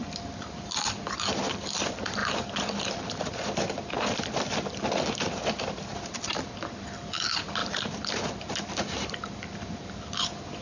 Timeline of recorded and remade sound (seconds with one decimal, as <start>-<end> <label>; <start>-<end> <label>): 0.0-0.9 remade; 0.9-2.2 recorded; 2.2-4.3 remade; 4.3-5.9 recorded; 5.9-6.5 remade; 6.5-10.6 recorded